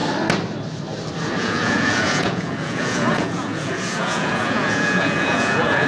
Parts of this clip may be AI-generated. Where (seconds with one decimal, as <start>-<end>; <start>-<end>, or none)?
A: 1.4-5.9